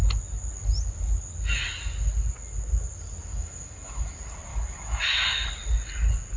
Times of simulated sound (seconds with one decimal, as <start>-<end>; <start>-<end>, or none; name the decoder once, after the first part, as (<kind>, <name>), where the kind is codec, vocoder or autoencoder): 3.3-4.1 (autoencoder, DAC-VAE); 4.5-5.5